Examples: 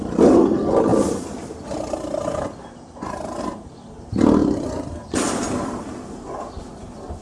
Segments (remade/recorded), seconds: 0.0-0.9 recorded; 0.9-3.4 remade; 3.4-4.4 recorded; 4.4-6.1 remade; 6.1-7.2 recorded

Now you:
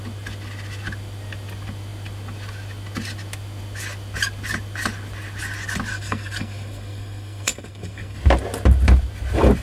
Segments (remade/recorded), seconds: 0.0-5.9 recorded; 5.9-8.2 remade; 8.2-9.6 recorded

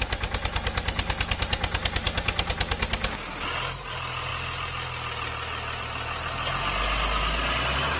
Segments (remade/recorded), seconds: 0.0-8.0 recorded

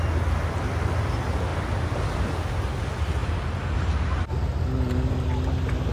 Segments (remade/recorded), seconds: 0.0-5.9 recorded